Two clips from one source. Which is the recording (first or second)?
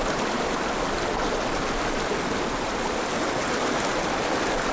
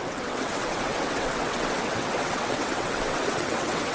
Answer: first